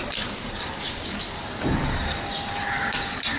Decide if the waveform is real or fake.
fake